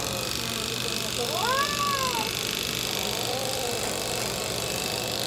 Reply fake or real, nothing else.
real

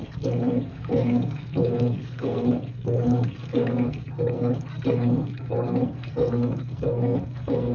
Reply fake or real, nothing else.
fake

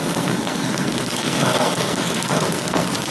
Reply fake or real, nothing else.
fake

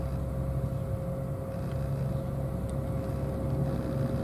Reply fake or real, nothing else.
real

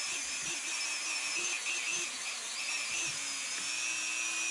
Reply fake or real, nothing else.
real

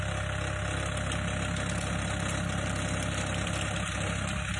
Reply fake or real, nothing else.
real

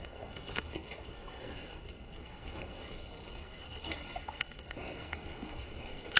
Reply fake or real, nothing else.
fake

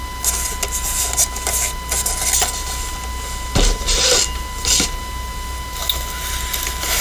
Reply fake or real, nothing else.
real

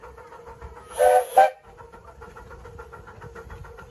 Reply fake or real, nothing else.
real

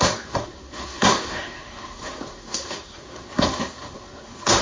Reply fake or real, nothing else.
fake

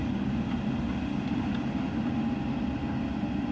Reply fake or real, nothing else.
real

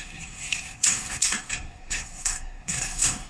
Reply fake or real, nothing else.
fake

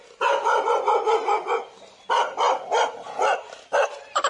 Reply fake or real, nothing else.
real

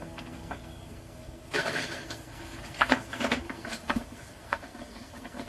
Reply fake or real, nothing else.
fake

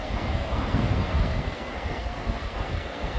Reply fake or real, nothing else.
fake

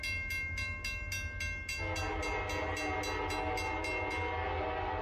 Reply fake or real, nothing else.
real